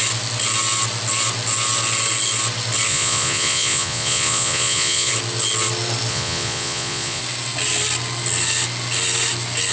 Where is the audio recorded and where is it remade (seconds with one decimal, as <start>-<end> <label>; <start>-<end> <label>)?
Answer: 0.0-2.9 recorded; 2.9-5.1 remade; 5.1-6.1 recorded; 6.1-7.2 remade; 7.2-9.7 recorded